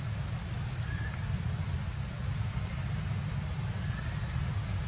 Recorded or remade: recorded